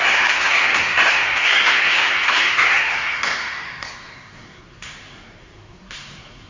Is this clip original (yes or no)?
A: no